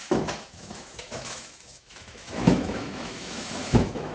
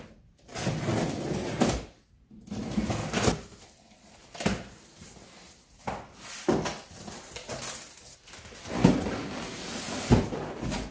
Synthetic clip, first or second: first